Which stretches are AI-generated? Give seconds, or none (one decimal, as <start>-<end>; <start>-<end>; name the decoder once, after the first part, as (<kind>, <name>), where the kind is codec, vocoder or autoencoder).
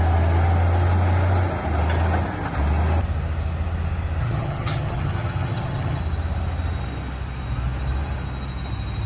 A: 4.2-6.0 (vocoder, HiFi-GAN)